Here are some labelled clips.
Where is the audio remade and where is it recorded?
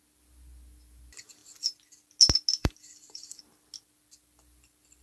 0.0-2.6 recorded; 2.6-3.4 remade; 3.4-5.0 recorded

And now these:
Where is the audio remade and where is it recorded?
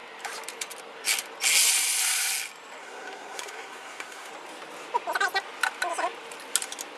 0.0-2.8 recorded; 2.8-4.3 remade; 4.3-7.0 recorded